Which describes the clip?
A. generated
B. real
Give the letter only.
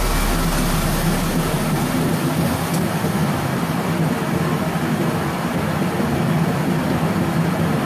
B